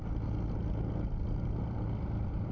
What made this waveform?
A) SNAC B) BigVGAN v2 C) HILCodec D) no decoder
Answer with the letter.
B